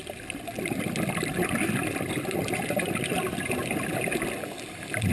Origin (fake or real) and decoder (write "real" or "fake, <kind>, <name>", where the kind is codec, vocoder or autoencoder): real